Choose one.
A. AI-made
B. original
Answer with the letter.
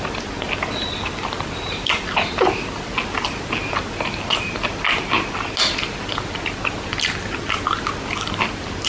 B